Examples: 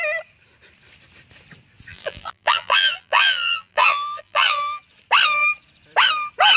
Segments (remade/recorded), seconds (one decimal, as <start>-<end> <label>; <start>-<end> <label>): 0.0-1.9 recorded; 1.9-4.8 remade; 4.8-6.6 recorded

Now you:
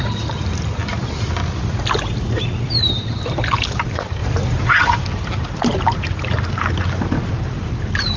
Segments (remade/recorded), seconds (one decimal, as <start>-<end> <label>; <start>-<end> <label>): 0.0-8.2 recorded

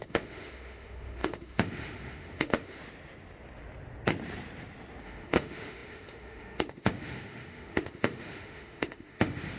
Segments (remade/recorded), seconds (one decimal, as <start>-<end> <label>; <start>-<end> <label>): 0.0-2.8 remade; 2.8-5.0 recorded; 5.0-9.6 remade